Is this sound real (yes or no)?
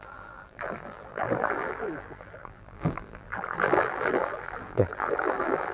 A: no